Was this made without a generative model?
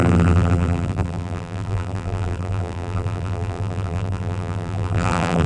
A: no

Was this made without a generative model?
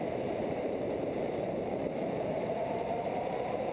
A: no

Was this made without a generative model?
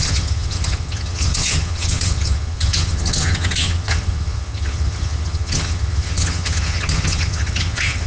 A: no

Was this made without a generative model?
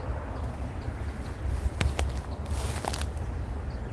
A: yes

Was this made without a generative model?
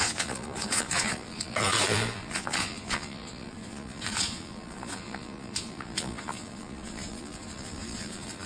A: no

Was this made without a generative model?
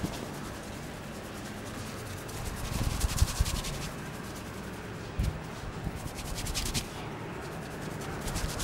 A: yes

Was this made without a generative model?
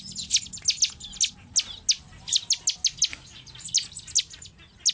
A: yes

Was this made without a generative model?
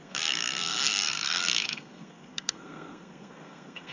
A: no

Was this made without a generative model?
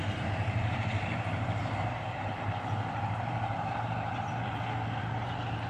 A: no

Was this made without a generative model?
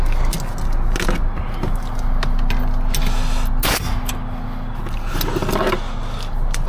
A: yes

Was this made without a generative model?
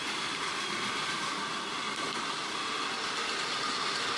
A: yes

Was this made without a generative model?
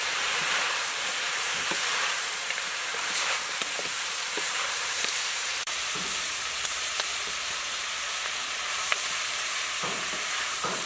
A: no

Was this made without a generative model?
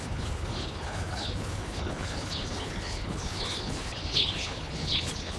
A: no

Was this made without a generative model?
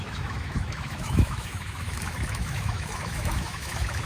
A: no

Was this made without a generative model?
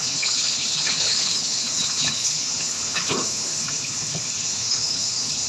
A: no